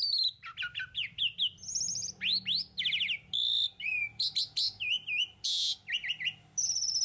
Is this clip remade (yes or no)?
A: no